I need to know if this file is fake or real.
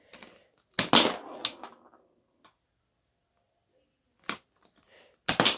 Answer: real